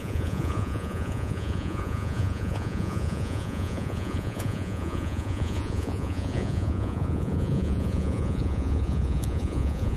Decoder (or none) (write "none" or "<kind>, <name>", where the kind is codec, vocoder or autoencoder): vocoder, Vocos